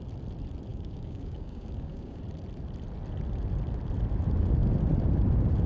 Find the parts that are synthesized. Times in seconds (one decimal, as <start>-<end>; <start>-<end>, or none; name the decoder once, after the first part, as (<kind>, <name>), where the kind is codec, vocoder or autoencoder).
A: 0.7-2.2 (codec, DAC)